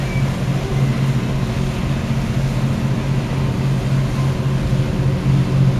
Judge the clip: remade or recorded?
recorded